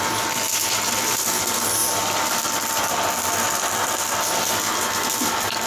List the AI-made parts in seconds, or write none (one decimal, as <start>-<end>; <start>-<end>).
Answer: 1.8-3.7